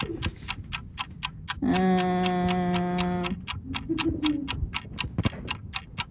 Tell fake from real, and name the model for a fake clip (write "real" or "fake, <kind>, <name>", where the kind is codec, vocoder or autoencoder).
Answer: real